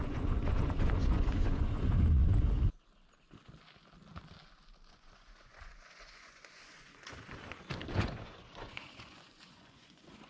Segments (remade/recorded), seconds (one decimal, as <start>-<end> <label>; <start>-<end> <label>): 0.0-2.3 remade; 2.3-4.9 recorded; 4.9-7.1 remade; 7.1-7.9 recorded; 7.9-10.3 remade